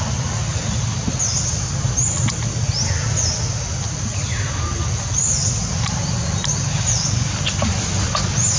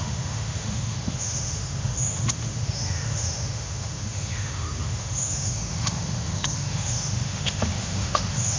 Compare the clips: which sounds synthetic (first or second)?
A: second